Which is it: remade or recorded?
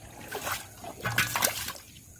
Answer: recorded